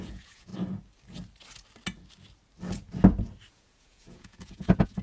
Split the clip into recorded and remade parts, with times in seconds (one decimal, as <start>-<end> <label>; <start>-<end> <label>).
0.0-0.5 remade; 0.5-3.5 recorded; 3.5-5.0 remade